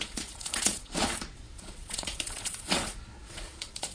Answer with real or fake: fake